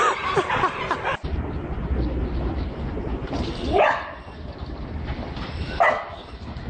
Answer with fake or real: real